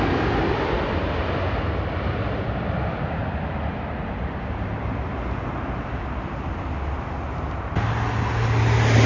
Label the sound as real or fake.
real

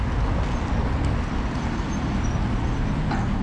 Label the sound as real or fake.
real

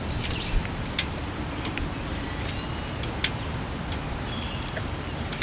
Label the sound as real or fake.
real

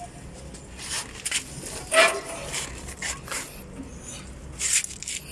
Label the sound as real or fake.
real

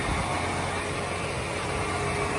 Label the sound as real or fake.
real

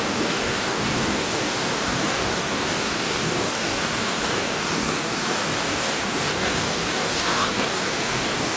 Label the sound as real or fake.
fake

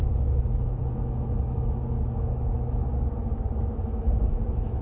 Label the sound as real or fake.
fake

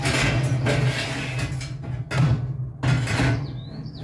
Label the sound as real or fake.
real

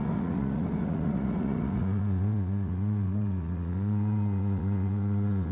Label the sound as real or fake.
fake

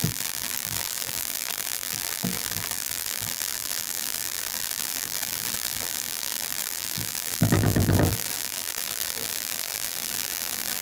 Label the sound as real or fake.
fake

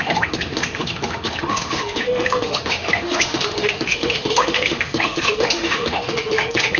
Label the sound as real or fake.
fake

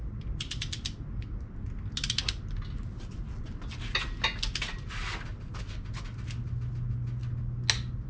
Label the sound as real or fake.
real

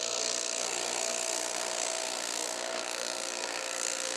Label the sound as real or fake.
fake